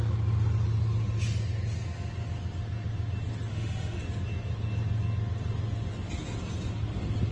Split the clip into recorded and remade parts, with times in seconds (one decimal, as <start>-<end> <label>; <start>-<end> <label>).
0.0-3.5 recorded; 3.5-4.0 remade; 4.0-7.3 recorded